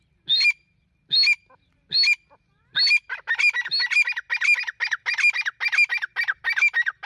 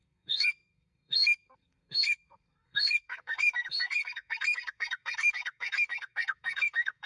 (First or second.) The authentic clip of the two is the first